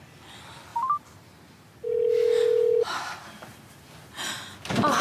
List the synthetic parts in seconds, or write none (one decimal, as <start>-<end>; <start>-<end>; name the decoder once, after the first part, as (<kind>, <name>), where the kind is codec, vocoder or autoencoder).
none